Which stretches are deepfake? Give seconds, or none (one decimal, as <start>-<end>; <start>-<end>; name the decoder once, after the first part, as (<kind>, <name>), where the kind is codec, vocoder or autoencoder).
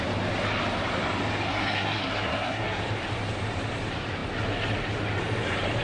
1.5-2.8 (codec, SNAC)